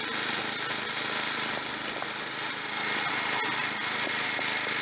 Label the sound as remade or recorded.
recorded